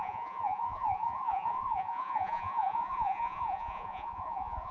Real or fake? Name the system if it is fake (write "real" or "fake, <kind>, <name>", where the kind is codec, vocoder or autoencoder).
fake, vocoder, Vocos